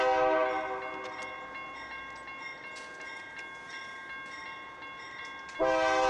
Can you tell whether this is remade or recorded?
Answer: recorded